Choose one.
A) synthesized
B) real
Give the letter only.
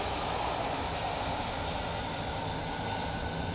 B